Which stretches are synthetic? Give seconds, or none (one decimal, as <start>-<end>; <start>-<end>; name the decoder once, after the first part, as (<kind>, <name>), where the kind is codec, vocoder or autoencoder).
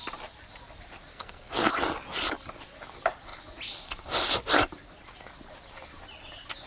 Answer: 1.1-1.7 (codec, SNAC)